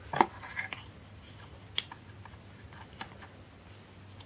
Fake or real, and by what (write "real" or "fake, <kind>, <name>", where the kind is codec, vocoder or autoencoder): real